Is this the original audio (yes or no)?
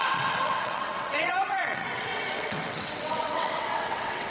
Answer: no